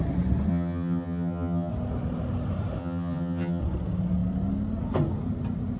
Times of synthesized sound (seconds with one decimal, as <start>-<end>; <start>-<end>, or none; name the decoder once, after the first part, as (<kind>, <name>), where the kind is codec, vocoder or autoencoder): 0.5-1.7 (vocoder, HiFi-GAN); 2.8-3.6